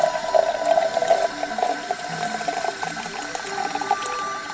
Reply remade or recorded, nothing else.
recorded